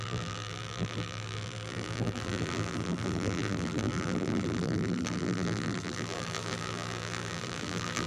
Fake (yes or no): yes